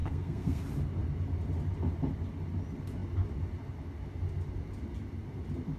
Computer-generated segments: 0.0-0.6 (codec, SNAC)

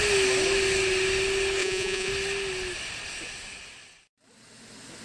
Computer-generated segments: 1.6-2.1 (vocoder, Vocos)